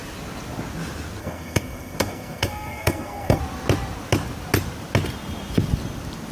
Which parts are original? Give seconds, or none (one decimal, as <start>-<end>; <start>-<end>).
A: 0.0-1.2; 3.4-6.3